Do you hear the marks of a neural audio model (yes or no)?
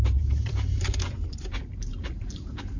yes